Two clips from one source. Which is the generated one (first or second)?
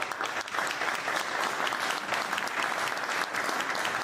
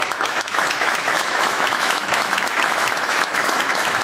second